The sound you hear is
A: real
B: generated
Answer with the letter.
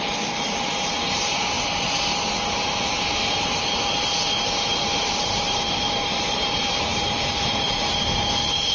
B